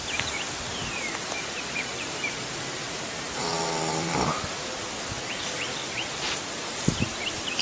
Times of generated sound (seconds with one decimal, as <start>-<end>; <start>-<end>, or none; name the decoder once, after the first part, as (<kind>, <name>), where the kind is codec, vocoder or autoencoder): 0.0-3.5 (vocoder, BigVGAN v2); 4.6-7.6